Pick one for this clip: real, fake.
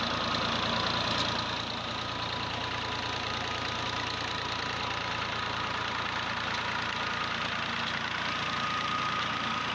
real